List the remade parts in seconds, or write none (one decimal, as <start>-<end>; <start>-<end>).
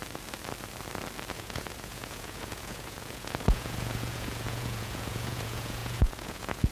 1.3-6.7